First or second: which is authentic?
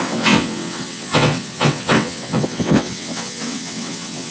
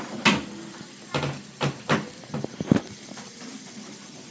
second